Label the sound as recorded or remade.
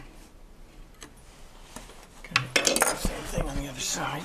recorded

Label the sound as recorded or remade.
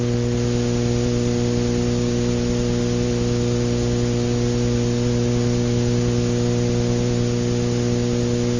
recorded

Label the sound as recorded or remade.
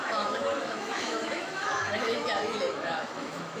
remade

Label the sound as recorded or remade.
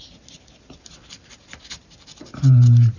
recorded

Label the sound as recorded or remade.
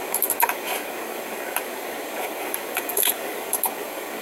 remade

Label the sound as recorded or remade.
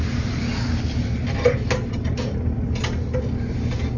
recorded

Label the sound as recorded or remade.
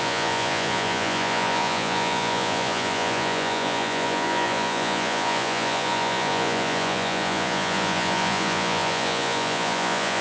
remade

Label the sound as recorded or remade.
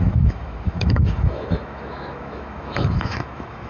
remade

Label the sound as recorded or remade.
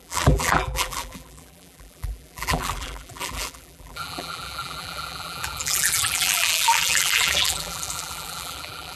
remade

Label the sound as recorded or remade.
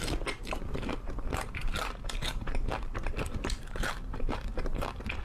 remade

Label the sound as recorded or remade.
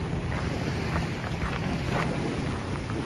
recorded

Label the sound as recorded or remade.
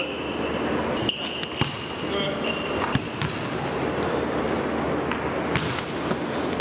recorded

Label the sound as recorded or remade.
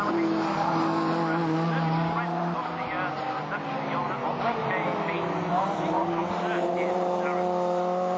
recorded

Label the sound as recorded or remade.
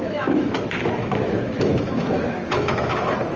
remade